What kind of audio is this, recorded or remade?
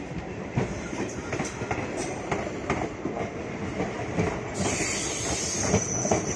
recorded